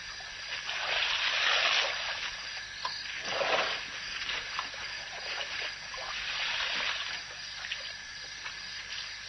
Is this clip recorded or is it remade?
recorded